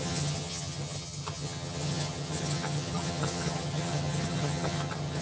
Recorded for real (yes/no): no